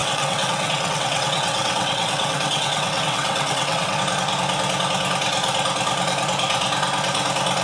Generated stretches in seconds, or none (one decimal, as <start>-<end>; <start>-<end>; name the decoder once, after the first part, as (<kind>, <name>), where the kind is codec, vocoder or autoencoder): 0.0-4.0 (vocoder, WaveNeXt)